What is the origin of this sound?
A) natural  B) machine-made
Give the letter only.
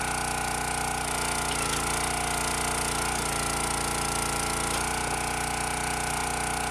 A